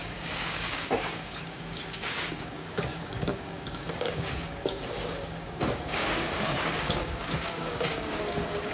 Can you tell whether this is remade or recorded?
remade